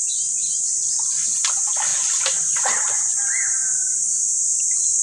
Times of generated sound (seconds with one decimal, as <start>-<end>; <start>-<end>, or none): 1.9-2.7